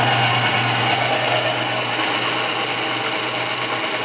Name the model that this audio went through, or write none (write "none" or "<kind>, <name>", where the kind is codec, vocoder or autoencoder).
none